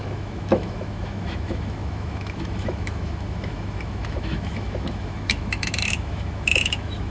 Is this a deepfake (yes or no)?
yes